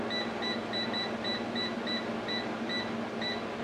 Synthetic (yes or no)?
no